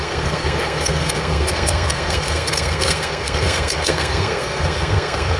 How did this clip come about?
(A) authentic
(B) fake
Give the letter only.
B